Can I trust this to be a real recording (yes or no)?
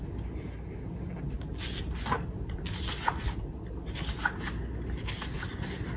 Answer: yes